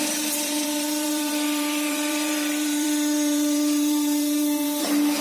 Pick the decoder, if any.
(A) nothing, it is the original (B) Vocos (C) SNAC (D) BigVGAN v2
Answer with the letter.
D